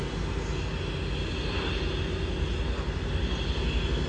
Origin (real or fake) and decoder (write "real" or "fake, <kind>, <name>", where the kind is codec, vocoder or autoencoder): real